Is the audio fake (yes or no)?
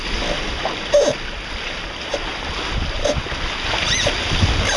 no